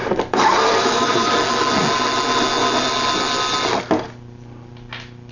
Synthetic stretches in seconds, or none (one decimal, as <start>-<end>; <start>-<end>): 0.0-1.3